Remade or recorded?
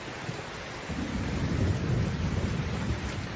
recorded